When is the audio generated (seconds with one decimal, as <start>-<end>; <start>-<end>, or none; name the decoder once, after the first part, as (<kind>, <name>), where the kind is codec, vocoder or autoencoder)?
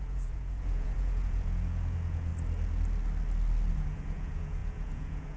0.0-2.3 (vocoder, Vocos); 3.7-5.4